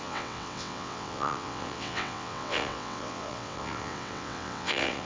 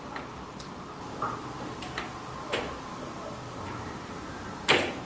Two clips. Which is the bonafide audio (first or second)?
second